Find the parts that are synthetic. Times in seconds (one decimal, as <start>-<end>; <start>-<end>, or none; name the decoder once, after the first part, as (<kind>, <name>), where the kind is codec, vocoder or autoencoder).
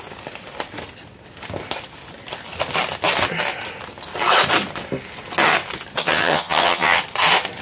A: 6.0-7.0 (vocoder, HiFi-GAN)